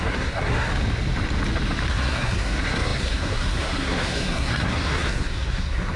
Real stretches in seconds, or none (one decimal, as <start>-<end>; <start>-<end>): 0.7-1.9